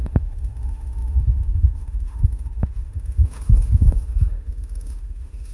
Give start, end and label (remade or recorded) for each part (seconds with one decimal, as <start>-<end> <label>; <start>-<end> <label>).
0.0-5.5 remade